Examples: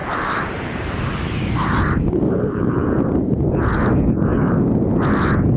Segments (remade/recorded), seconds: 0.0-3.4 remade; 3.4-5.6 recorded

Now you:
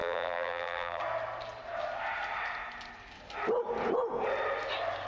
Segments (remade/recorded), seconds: 0.0-1.0 remade; 1.0-5.1 recorded

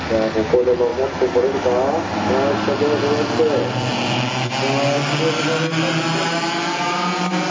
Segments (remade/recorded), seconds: 0.0-7.5 recorded

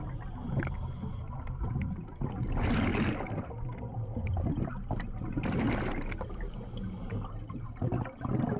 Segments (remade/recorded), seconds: 0.0-8.6 recorded